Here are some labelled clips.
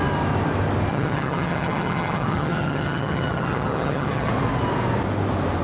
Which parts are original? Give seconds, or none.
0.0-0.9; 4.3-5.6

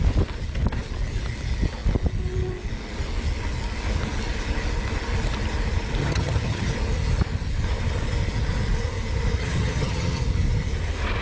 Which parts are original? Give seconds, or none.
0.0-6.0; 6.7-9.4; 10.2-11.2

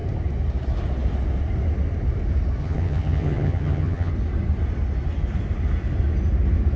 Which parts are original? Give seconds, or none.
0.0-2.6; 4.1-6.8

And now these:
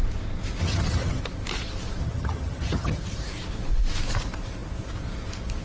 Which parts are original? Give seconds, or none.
0.0-0.6; 1.2-2.0; 3.0-5.6